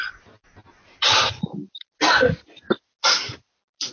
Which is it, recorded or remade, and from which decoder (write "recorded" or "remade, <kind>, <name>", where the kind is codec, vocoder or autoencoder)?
recorded